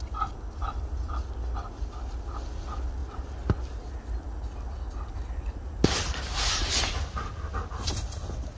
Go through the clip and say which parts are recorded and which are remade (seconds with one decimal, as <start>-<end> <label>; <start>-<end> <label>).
0.0-8.6 recorded